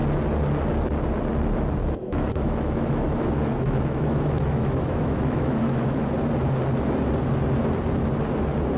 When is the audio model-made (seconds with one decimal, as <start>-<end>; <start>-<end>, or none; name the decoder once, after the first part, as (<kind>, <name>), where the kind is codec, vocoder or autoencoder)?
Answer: 1.8-6.1 (autoencoder, DAC-VAE)